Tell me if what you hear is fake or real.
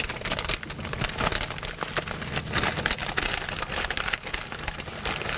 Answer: real